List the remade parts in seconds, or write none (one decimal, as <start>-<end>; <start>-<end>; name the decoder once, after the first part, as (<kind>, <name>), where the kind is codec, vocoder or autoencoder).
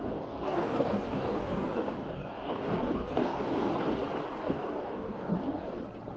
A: 0.0-3.7 (codec, DAC); 4.4-5.8